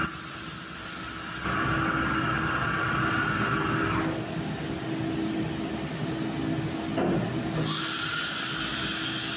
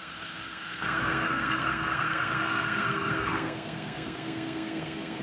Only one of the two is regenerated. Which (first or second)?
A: second